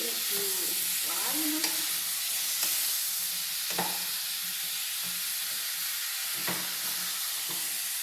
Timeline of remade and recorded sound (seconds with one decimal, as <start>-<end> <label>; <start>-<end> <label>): 0.0-8.0 recorded